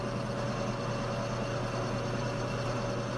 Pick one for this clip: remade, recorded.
recorded